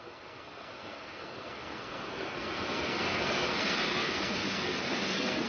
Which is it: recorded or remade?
remade